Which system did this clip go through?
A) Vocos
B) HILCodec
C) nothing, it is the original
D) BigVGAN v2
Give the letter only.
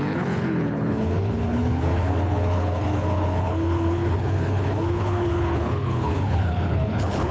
B